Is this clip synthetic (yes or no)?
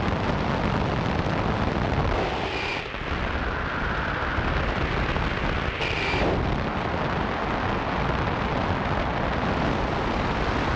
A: no